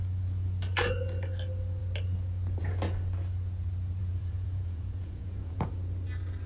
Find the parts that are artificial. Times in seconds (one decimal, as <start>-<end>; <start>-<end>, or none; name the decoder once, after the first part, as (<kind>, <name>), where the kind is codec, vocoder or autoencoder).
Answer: 4.0-5.7 (vocoder, Vocos)